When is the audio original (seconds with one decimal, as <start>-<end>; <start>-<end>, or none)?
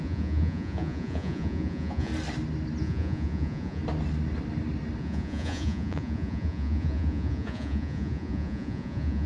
2.1-2.8; 3.8-5.0